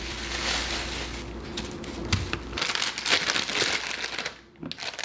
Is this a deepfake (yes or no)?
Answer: no